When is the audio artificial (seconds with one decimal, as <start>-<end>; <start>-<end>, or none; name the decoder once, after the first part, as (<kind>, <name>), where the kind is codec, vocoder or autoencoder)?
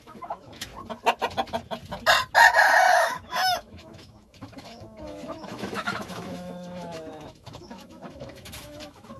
0.0-0.7 (autoencoder, DAC-VAE); 2.9-9.2